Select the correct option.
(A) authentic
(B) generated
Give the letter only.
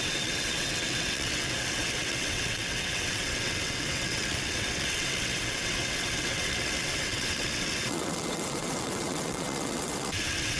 B